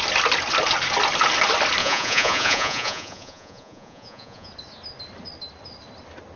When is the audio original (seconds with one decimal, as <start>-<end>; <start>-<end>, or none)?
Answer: 0.0-1.8; 4.5-6.4